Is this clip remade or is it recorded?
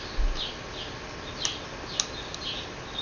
recorded